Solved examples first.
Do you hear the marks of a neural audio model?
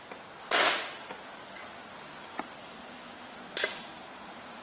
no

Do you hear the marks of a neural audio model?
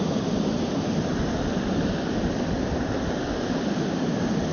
no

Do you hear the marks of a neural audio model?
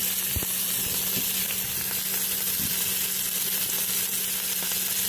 no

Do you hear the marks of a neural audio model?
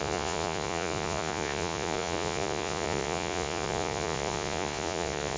yes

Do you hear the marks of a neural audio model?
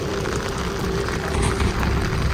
yes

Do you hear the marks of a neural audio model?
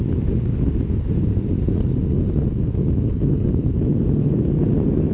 no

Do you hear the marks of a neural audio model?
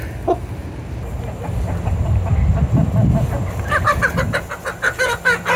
no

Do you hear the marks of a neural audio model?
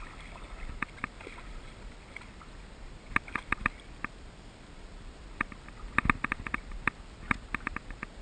yes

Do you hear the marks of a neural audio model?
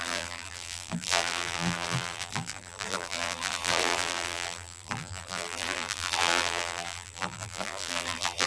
yes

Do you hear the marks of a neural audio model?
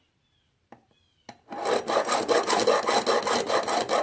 no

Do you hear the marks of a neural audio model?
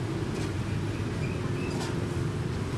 no